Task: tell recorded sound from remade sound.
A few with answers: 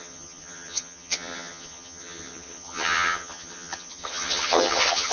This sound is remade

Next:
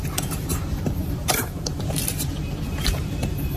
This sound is remade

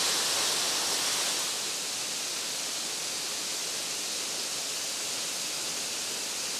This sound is recorded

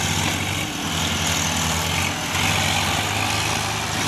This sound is recorded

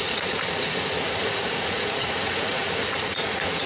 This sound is remade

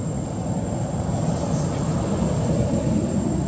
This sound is recorded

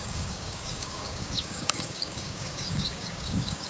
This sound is remade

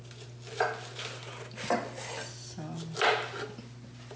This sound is recorded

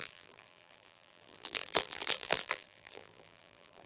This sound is remade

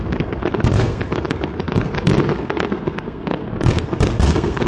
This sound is remade